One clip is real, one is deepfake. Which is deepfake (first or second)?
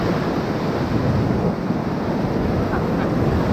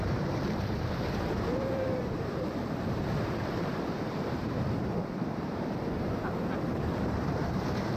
second